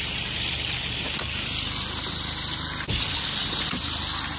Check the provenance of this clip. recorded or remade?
recorded